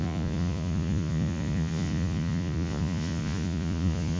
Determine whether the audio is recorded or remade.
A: remade